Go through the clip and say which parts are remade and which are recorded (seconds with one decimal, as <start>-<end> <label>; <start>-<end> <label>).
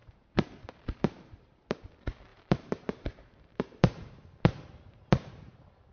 0.0-1.9 remade; 1.9-2.3 recorded; 2.3-4.7 remade; 4.7-5.9 recorded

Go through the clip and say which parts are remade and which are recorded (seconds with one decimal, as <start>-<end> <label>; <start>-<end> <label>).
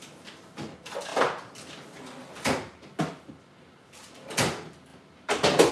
0.0-4.9 recorded; 4.9-5.7 remade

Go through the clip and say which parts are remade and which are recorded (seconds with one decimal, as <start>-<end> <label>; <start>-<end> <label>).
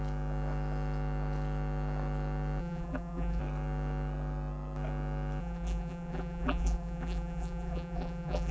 0.0-2.6 recorded; 2.6-3.4 remade; 3.4-5.4 recorded; 5.4-8.5 remade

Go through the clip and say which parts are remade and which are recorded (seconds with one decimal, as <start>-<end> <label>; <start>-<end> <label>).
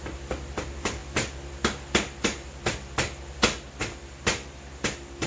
0.0-5.3 recorded